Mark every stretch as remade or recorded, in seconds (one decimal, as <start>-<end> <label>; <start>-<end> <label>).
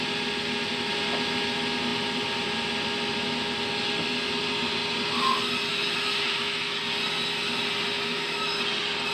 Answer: 0.0-5.7 recorded; 5.7-6.8 remade; 6.8-8.1 recorded; 8.1-8.6 remade; 8.6-9.1 recorded